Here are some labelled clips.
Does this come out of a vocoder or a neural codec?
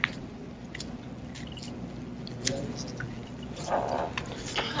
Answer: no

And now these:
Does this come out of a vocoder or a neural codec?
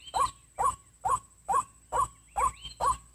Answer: no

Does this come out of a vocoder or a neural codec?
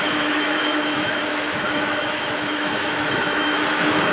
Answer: yes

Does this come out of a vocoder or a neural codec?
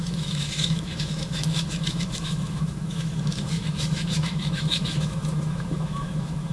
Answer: yes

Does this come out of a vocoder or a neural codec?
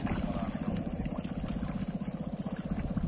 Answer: no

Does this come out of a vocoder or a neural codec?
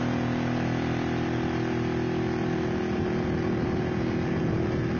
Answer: no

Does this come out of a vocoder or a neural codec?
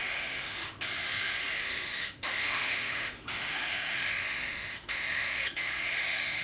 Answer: yes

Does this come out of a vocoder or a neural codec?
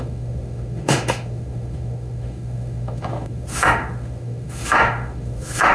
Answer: yes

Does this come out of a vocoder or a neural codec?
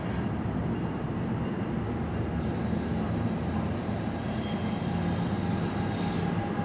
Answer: no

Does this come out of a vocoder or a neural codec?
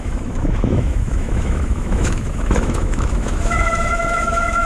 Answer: yes